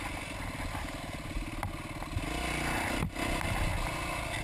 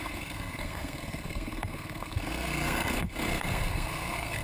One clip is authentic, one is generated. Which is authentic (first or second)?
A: first